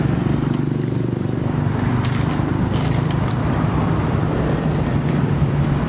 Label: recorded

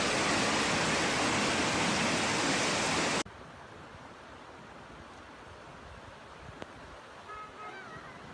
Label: recorded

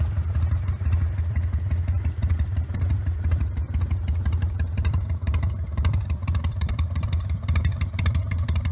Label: remade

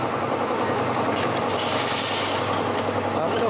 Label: recorded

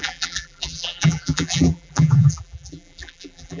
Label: remade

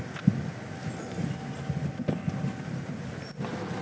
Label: recorded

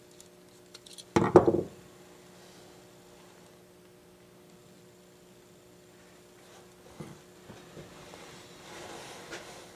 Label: recorded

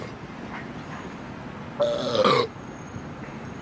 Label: recorded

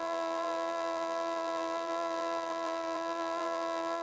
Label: remade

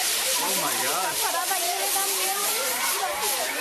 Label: remade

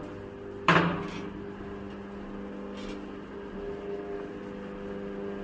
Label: recorded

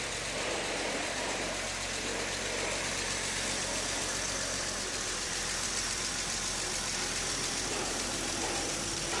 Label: remade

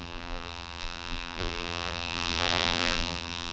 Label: remade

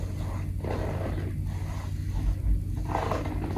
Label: recorded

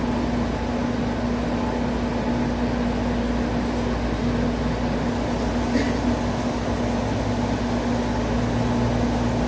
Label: recorded